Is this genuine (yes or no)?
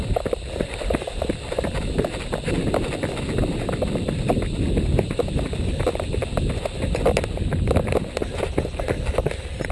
no